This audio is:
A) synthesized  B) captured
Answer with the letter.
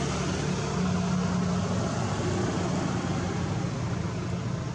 B